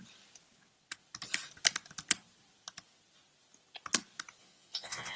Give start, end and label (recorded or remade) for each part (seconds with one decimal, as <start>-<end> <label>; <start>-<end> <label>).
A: 0.0-4.4 recorded; 4.4-5.2 remade